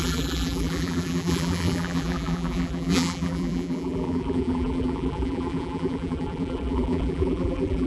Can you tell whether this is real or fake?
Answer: fake